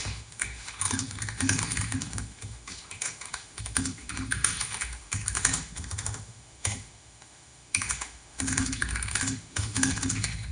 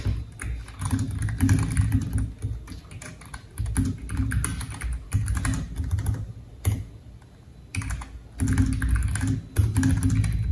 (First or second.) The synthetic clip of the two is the first